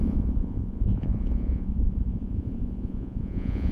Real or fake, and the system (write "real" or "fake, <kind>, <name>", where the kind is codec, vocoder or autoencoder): fake, vocoder, Vocos